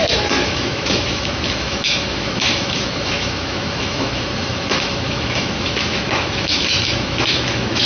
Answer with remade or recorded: remade